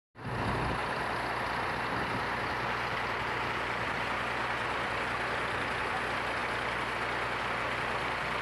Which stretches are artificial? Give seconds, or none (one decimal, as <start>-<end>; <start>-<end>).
none